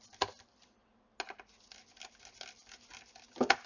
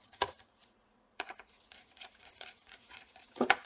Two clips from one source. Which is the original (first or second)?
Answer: first